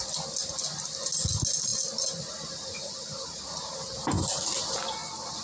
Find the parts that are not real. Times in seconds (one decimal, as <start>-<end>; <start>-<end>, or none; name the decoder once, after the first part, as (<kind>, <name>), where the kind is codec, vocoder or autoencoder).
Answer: none